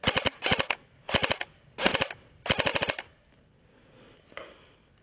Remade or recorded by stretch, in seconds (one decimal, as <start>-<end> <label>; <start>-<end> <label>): 0.0-5.0 recorded